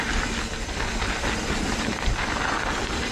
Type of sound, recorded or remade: recorded